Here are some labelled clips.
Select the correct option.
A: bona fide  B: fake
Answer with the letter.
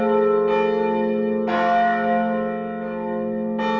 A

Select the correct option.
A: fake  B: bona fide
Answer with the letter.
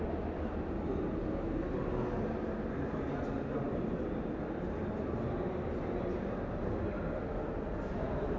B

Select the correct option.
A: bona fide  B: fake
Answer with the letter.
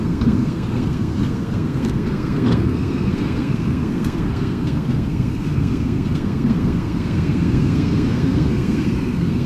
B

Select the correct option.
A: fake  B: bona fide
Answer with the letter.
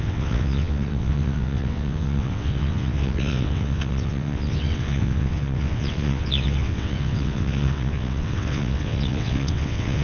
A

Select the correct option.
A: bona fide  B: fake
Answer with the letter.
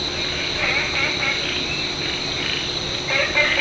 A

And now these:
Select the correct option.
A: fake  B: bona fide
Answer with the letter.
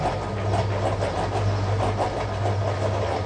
B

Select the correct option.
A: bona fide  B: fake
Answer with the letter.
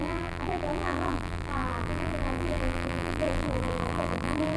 B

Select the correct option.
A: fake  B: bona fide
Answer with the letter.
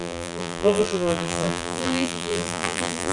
A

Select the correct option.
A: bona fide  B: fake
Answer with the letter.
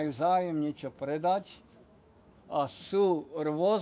B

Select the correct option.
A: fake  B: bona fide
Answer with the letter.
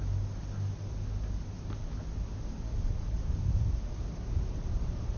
B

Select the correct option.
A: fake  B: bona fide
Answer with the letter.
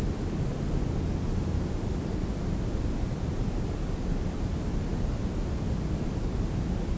B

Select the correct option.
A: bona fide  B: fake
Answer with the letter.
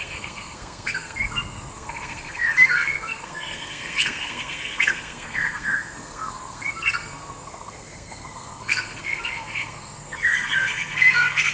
B